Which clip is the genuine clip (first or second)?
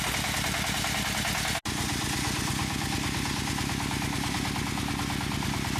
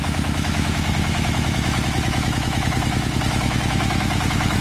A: first